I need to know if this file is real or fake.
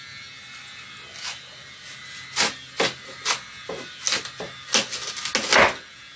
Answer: real